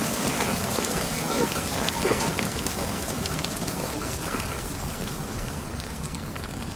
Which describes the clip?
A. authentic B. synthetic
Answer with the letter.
B